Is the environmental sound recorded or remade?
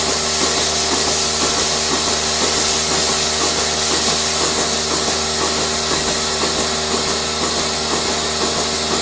recorded